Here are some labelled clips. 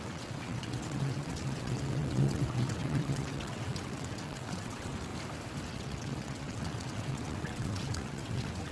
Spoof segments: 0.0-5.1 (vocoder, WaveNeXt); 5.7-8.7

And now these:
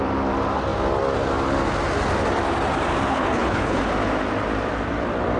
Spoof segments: 3.1-3.8 (codec, HILCodec)